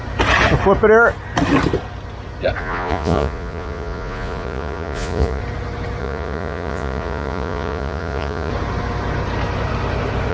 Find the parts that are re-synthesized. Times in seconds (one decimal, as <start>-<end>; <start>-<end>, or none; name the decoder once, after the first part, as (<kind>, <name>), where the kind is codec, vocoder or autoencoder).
2.6-5.4 (vocoder, Vocos); 6.0-8.5